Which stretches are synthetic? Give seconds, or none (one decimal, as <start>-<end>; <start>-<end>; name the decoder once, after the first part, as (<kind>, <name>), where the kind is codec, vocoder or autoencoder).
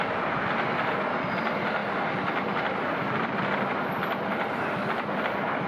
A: none